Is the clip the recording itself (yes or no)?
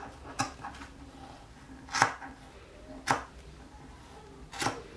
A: yes